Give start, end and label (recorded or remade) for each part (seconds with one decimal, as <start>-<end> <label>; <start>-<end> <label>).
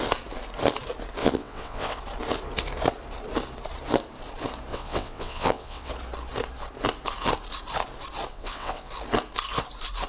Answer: 0.0-1.2 recorded; 1.2-2.0 remade; 2.0-4.7 recorded; 4.7-5.9 remade; 5.9-8.3 recorded; 8.3-8.9 remade; 8.9-10.1 recorded